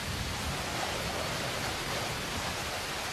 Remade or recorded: recorded